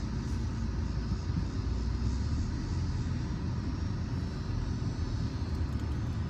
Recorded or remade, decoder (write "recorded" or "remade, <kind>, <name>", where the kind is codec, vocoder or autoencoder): recorded